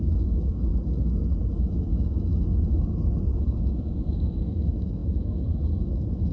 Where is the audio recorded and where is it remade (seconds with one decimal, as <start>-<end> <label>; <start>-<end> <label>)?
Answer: 0.0-0.7 remade; 0.7-1.8 recorded; 1.8-2.3 remade; 2.3-3.3 recorded; 3.3-6.3 remade